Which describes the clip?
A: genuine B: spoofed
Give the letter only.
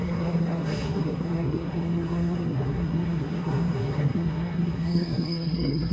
B